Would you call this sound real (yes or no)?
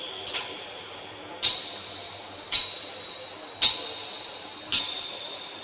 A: yes